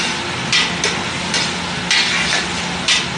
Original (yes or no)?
yes